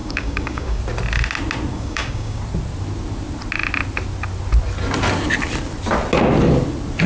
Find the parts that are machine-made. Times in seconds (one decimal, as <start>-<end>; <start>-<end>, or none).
0.0-0.8; 1.7-2.4